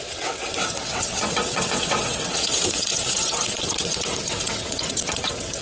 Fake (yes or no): yes